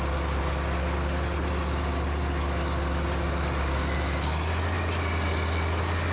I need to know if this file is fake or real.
real